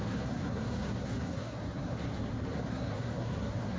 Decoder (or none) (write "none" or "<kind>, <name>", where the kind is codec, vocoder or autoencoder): codec, SNAC